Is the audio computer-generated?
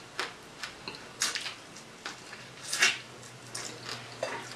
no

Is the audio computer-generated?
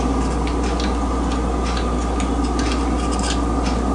no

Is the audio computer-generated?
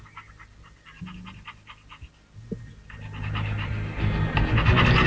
no